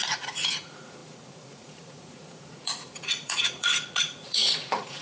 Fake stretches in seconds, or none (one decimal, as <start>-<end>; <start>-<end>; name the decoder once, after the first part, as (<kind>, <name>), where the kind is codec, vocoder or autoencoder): 0.0-5.0 (vocoder, Vocos)